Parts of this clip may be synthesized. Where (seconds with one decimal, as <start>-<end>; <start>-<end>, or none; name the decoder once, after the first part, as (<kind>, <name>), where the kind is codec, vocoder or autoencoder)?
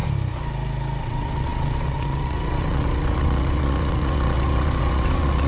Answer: 1.0-5.5 (vocoder, WaveNeXt)